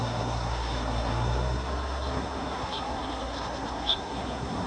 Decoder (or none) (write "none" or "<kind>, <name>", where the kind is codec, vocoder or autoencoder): codec, SNAC